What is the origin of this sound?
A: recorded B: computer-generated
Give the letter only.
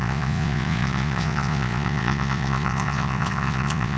B